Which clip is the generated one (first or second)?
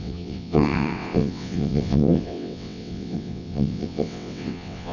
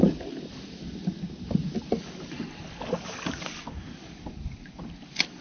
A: first